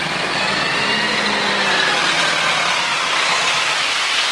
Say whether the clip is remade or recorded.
recorded